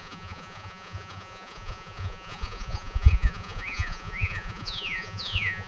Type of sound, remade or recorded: remade